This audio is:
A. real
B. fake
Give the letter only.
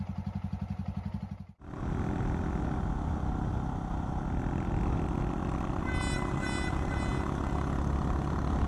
A